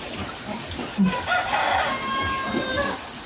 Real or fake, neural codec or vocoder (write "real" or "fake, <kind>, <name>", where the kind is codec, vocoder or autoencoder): real